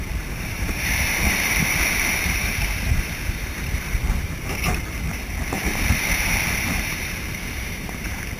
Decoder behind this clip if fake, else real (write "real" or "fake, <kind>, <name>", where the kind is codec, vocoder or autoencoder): fake, vocoder, BigVGAN v2